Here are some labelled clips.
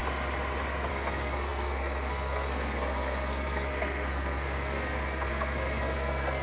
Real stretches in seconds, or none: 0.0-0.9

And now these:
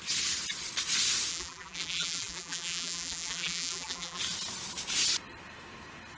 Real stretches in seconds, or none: 0.0-1.3; 4.2-6.2

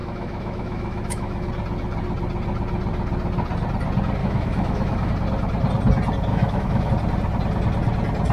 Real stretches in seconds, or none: 1.5-4.2; 5.1-6.3; 6.9-8.3

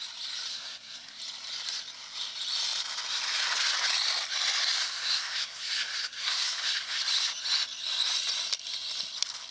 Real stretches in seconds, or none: 0.0-0.5; 1.2-4.8; 7.0-9.5

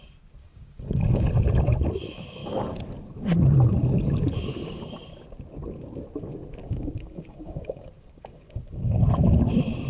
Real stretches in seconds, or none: 0.0-0.4; 1.3-6.6; 9.0-9.9

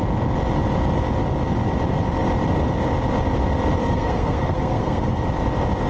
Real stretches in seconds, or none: 0.0-3.8; 5.2-5.9

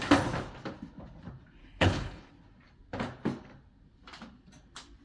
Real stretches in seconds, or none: 0.0-1.6; 2.3-5.0